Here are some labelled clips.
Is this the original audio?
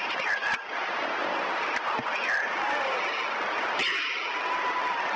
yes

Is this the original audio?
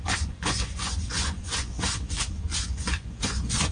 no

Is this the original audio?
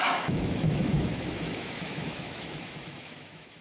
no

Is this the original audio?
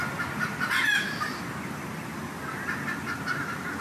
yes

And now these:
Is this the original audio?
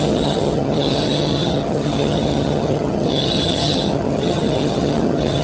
no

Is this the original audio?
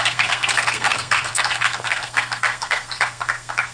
no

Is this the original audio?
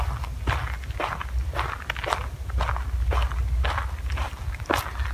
yes